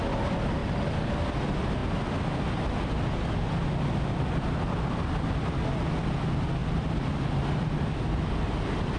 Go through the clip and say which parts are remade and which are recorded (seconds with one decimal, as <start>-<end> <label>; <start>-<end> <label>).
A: 0.0-6.6 recorded; 6.6-8.5 remade; 8.5-9.0 recorded